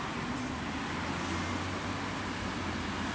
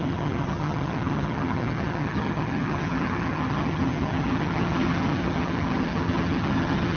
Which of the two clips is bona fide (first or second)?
first